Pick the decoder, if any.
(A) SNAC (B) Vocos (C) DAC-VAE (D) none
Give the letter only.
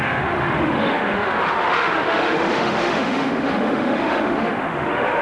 C